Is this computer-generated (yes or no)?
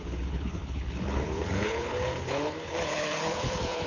yes